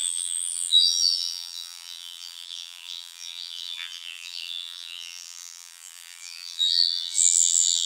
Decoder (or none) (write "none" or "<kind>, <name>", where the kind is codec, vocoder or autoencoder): vocoder, BigVGAN v2